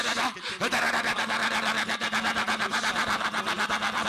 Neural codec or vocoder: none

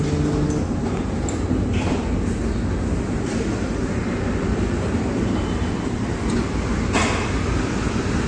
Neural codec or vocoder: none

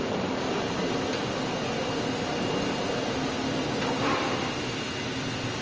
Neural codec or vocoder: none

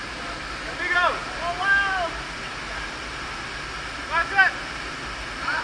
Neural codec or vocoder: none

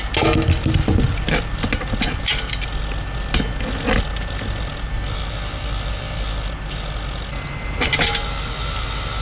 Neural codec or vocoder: none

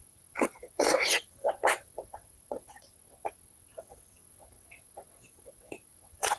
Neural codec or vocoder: vocoder, WaveNeXt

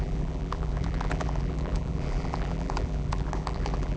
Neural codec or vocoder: vocoder, BigVGAN v2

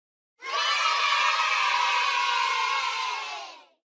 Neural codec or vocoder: none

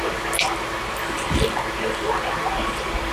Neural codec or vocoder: none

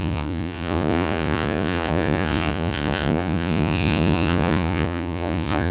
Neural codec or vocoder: vocoder, Vocos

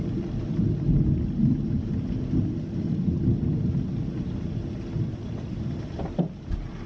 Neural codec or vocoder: none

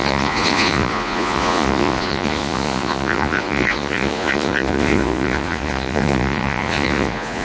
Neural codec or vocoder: vocoder, Vocos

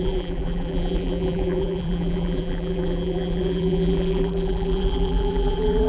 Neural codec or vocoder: vocoder, BigVGAN v2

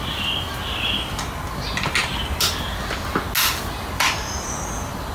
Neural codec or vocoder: none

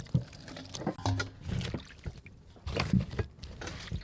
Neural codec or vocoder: none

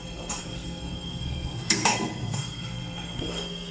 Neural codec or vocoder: codec, SNAC